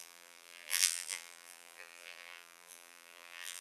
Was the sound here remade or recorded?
remade